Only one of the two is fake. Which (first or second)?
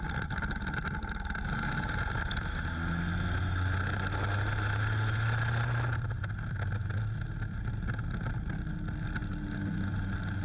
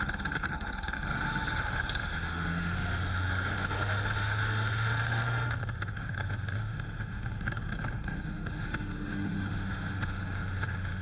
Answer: second